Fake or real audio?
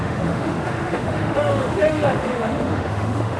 fake